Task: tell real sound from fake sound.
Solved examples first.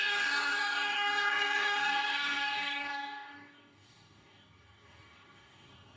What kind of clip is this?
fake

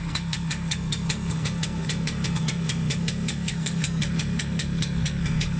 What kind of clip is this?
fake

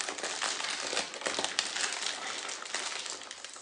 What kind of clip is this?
real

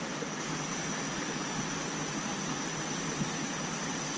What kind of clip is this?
real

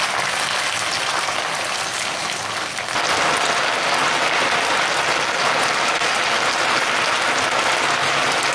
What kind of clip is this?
real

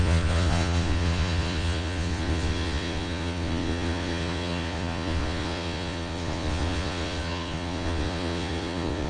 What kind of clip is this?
fake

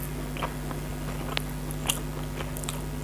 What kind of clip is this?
real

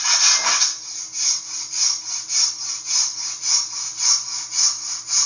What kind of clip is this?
real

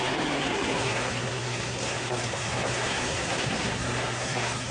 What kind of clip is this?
fake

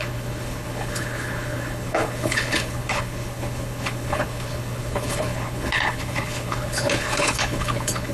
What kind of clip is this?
fake